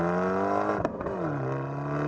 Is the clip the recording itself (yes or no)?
yes